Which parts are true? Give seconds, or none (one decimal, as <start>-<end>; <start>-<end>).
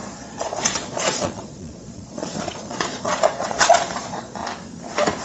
4.4-5.2